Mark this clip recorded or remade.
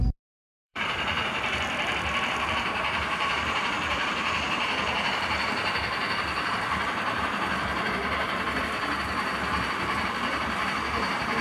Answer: remade